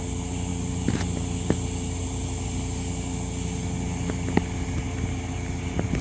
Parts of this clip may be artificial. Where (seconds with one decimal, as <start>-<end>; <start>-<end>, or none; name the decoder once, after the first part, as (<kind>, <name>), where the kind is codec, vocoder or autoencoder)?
none